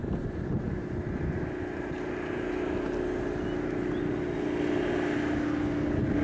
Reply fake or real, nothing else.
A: real